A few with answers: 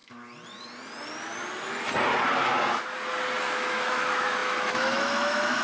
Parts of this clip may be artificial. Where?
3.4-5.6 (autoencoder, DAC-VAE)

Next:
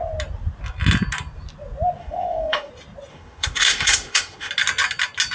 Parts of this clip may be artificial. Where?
2.0-2.7 (autoencoder, DAC-VAE); 3.1-4.5